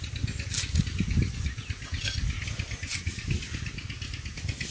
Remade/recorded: recorded